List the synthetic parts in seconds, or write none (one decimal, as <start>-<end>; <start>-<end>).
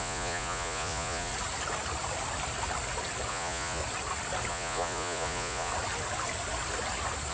0.0-1.3; 3.3-3.8; 4.5-5.7